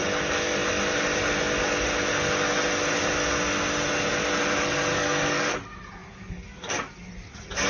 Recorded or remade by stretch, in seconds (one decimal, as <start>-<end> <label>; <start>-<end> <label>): 0.0-4.9 recorded; 4.9-5.5 remade; 5.5-6.0 recorded; 6.0-6.9 remade; 6.9-7.7 recorded